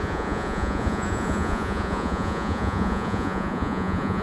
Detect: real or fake fake